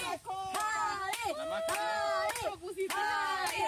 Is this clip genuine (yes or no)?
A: yes